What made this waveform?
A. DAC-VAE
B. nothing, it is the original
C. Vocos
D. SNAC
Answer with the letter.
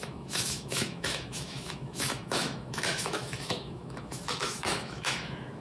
A